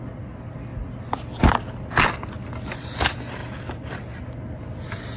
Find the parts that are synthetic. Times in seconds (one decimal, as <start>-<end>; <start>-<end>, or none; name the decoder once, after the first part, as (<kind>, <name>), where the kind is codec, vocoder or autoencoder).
none

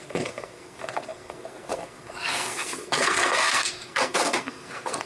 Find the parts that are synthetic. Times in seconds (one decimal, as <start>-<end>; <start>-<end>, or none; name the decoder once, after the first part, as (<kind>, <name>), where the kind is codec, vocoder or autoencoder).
0.0-5.1 (codec, SNAC)